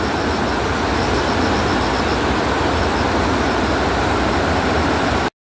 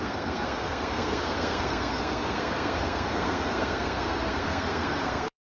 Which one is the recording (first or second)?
first